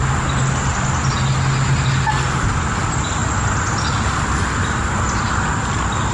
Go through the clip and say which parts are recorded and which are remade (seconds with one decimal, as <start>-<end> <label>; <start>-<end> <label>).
0.0-6.1 recorded